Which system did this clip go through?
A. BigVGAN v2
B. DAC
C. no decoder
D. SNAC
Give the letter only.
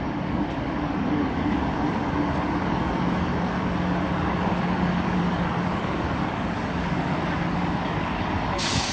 B